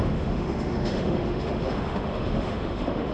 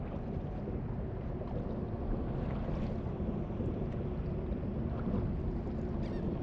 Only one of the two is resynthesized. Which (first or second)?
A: first